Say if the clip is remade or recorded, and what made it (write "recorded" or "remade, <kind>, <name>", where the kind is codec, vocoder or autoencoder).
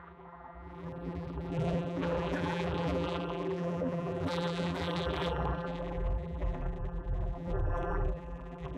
remade, vocoder, BigVGAN v2